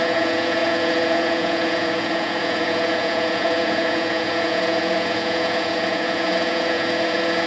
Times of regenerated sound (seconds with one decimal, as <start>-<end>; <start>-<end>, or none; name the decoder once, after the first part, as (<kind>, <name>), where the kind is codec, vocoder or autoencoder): 0.0-7.5 (vocoder, Vocos)